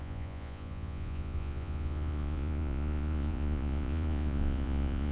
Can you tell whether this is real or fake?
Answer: fake